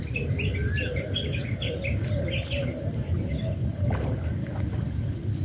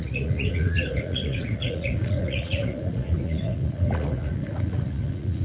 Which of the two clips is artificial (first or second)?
second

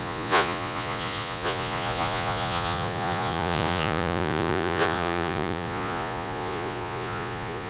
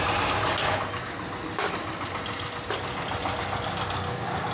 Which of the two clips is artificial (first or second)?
first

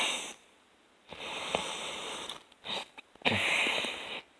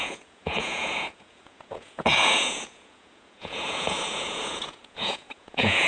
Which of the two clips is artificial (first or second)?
second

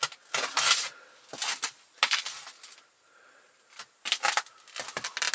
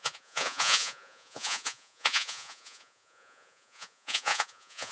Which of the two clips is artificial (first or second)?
second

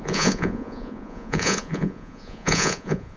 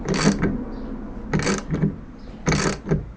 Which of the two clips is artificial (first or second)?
first